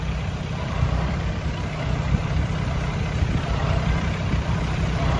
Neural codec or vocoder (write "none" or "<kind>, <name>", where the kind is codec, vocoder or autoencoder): vocoder, BigVGAN v2